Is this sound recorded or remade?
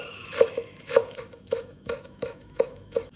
remade